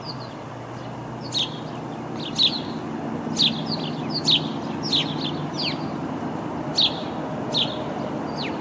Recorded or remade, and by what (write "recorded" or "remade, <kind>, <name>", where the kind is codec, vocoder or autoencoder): recorded